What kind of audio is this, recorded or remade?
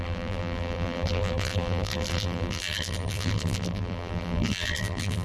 remade